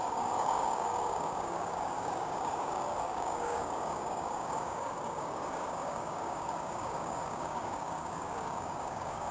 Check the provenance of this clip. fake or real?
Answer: fake